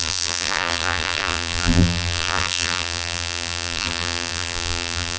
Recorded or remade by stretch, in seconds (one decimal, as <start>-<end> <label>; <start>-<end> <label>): 0.0-5.2 remade